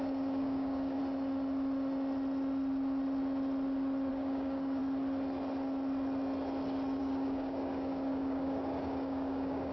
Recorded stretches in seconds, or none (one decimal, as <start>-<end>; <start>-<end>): 1.0-4.1; 4.8-7.0